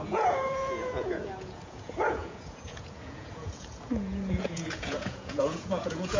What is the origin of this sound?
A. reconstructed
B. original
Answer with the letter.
A